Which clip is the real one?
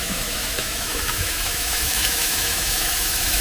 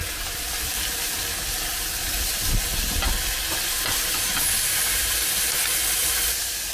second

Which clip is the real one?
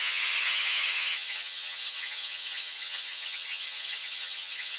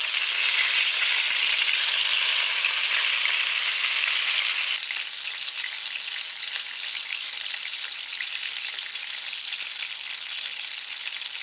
second